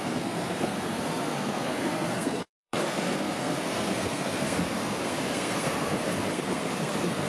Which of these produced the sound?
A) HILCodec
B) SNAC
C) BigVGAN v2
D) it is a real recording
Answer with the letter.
B